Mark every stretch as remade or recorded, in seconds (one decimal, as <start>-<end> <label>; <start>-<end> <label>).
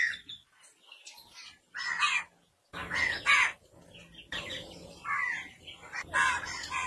0.0-6.9 recorded